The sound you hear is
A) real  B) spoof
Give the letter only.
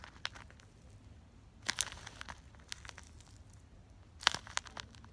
A